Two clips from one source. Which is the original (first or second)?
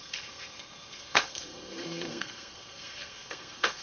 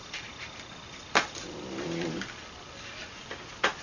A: second